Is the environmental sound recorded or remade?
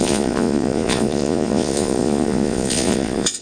remade